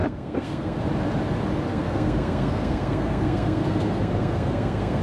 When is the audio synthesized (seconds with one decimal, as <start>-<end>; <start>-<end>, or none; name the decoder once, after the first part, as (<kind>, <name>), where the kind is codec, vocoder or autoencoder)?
0.0-0.8 (codec, SNAC); 1.7-5.0